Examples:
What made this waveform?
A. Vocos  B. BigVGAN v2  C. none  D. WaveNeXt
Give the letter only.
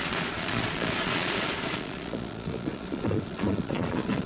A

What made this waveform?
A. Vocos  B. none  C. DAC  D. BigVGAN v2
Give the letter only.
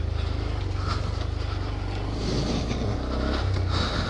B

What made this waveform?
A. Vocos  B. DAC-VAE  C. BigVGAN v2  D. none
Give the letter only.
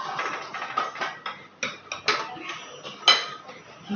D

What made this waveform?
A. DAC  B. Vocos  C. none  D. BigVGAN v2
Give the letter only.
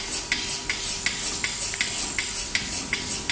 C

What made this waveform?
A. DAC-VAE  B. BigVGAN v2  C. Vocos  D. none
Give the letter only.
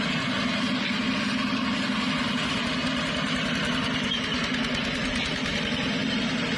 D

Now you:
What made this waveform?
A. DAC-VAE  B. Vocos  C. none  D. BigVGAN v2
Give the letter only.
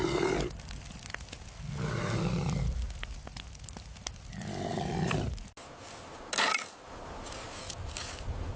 C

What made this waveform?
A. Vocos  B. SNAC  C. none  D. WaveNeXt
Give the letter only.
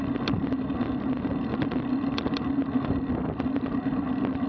C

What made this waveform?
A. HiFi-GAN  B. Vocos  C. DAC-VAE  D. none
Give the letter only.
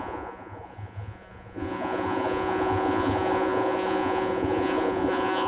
B